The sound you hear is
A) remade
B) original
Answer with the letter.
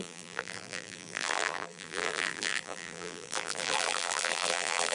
A